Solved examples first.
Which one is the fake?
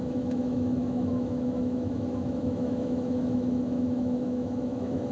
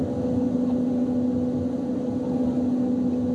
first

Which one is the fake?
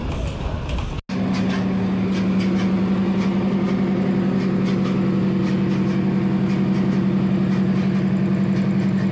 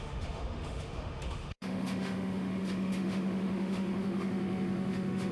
second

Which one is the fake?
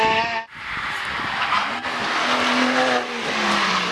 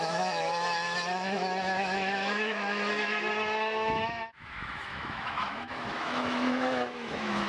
second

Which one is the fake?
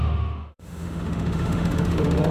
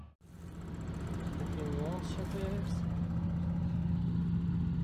first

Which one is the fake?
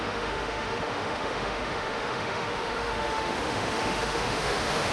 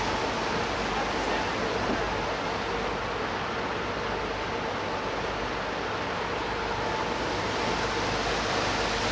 first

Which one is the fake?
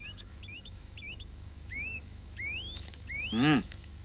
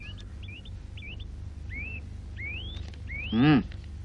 first